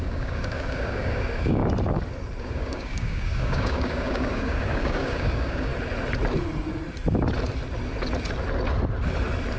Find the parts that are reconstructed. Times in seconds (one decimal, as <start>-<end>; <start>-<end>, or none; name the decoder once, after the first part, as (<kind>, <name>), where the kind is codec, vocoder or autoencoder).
0.0-1.6 (codec, DAC); 2.4-5.7